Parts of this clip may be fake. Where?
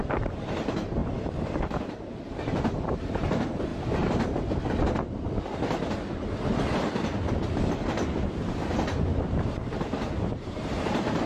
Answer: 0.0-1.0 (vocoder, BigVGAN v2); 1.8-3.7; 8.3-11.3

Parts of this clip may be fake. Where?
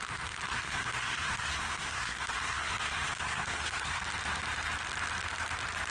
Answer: 0.5-4.0 (codec, SNAC)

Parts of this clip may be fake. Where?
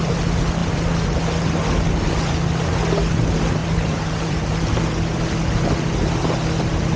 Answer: 3.6-4.5 (vocoder, BigVGAN v2)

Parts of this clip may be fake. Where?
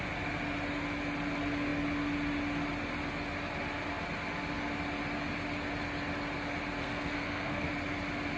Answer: 6.8-7.7 (codec, SNAC)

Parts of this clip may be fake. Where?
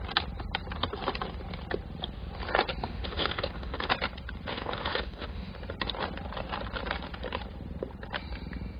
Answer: 2.8-3.9 (autoencoder, DAC-VAE); 4.5-5.5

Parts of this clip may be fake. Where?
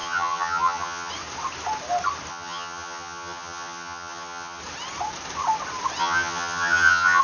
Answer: 0.0-1.1 (vocoder, HiFi-GAN); 2.3-4.6; 6.0-7.2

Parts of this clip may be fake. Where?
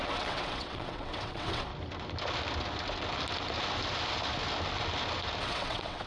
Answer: 0.0-1.7 (vocoder, WaveNeXt); 5.4-6.1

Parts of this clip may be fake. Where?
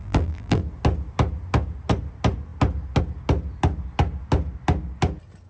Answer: 0.0-0.6 (vocoder, BigVGAN v2)